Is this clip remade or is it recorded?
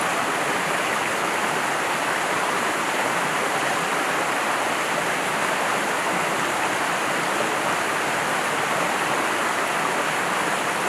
recorded